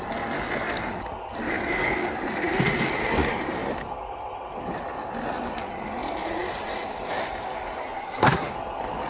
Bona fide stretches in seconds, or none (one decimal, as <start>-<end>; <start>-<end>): 0.0-7.8; 8.5-9.1